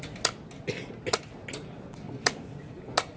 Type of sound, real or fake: real